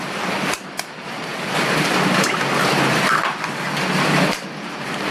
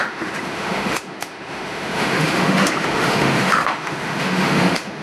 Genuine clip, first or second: first